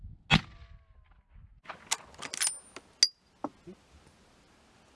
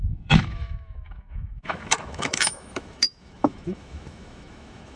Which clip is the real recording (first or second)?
first